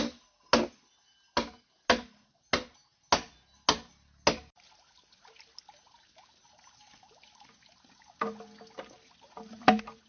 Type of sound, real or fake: real